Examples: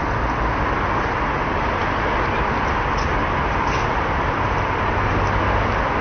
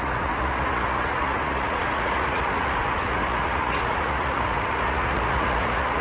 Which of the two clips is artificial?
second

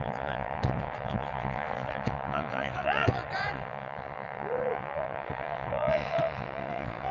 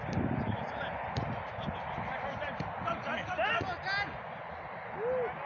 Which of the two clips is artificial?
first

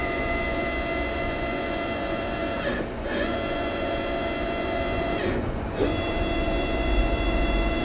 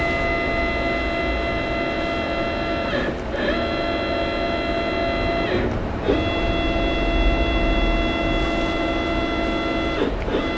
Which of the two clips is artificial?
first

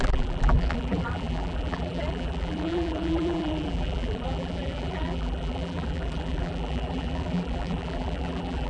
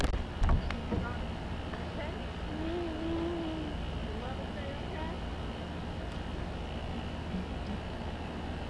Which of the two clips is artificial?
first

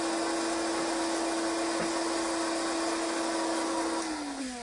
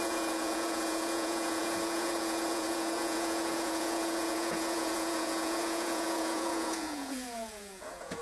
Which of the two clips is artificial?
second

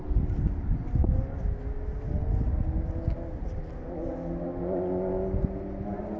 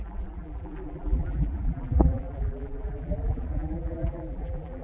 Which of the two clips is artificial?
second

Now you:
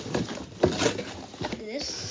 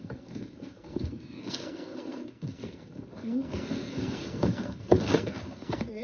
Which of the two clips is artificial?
second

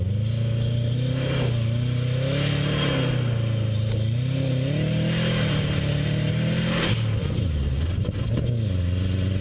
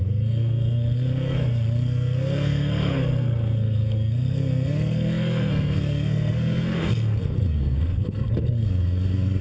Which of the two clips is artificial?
second